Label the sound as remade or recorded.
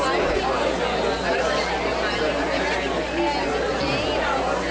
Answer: recorded